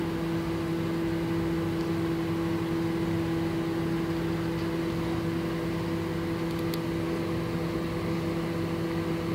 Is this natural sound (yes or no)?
yes